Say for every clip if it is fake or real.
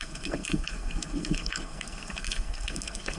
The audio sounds fake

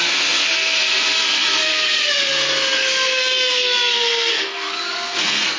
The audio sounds fake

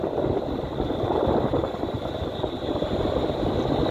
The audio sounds real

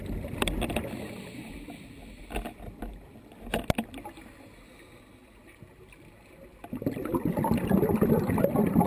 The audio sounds real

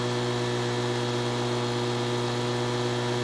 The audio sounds real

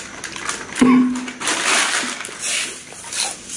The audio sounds real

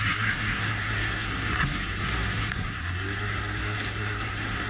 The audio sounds fake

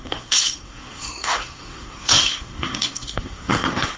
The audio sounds fake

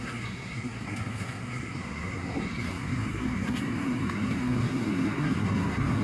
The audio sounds fake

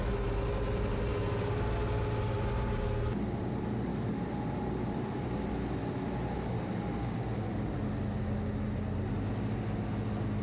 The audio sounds real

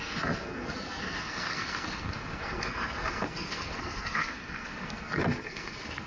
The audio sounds fake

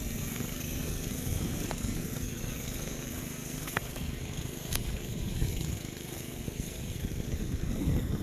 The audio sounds fake